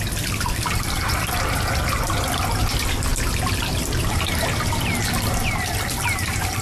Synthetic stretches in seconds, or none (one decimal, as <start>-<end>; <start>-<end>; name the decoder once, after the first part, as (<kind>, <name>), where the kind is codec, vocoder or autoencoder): none

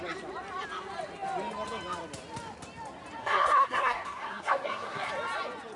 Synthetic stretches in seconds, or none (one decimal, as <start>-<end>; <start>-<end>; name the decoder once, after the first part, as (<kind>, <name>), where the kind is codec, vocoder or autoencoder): 3.2-5.1 (codec, SNAC)